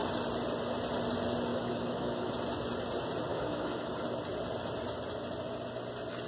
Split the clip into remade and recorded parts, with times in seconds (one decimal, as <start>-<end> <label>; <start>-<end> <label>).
0.0-1.5 recorded; 1.5-2.3 remade; 2.3-3.3 recorded; 3.3-3.9 remade; 3.9-6.3 recorded